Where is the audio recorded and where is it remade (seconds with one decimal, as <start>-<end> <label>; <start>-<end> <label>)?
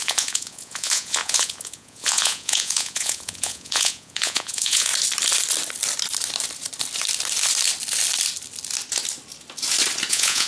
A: 0.0-4.9 remade; 4.9-10.1 recorded; 10.1-10.5 remade